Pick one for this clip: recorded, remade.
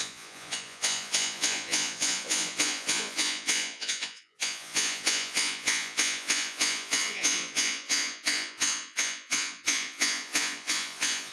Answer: remade